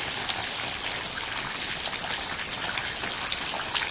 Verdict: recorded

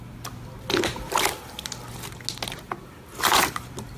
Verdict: recorded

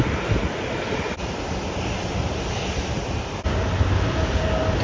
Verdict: recorded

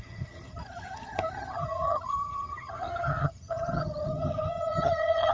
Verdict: remade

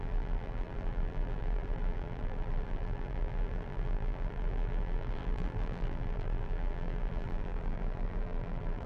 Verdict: remade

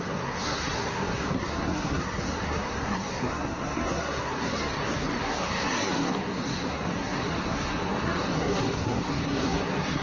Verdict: remade